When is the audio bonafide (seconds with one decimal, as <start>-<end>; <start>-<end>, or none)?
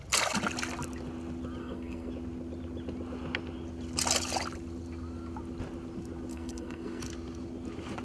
0.0-1.6; 2.1-6.3; 7.0-8.0